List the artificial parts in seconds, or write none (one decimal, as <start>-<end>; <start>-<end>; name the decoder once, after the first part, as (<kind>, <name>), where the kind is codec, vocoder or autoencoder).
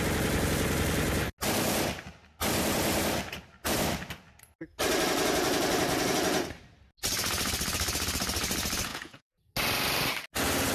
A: 8.9-9.5 (vocoder, Vocos)